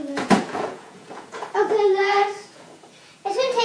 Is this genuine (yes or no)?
no